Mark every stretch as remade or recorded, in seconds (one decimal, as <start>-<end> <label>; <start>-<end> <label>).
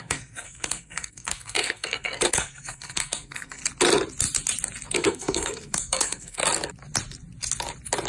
0.0-3.6 remade; 3.6-4.9 recorded; 4.9-6.4 remade; 6.4-8.1 recorded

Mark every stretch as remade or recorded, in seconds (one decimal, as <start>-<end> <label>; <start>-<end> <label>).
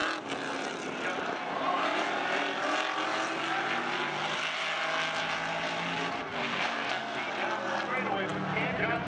0.0-6.3 recorded; 6.3-7.2 remade; 7.2-9.1 recorded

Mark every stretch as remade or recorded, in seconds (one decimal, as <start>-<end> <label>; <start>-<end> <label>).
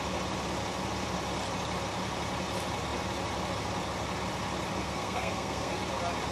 0.0-4.8 recorded; 4.8-5.8 remade; 5.8-6.3 recorded